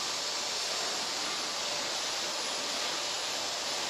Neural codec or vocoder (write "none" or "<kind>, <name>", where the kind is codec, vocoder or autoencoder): none